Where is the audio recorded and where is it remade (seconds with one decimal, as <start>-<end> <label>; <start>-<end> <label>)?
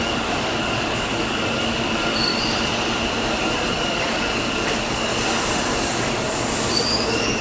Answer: 0.0-2.3 remade; 2.3-3.4 recorded; 3.4-5.1 remade; 5.1-5.7 recorded; 5.7-7.4 remade